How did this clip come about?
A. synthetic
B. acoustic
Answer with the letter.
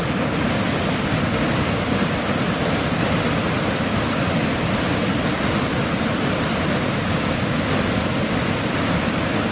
B